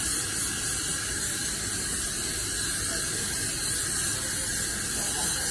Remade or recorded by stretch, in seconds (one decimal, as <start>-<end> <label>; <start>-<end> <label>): 0.0-5.5 recorded